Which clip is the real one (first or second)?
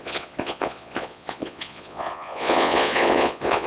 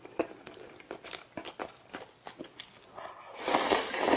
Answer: second